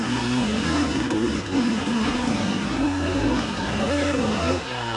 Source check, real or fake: fake